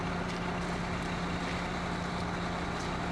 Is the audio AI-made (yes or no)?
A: no